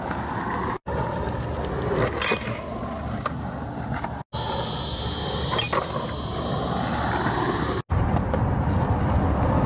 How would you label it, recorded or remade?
recorded